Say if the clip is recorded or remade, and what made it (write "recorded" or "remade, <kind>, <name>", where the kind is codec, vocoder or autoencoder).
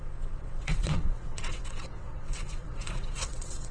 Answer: remade, vocoder, WaveNeXt